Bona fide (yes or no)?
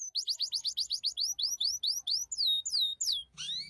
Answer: yes